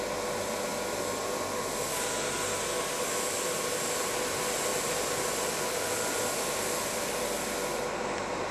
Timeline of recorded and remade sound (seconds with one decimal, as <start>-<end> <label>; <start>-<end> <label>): 0.0-8.5 recorded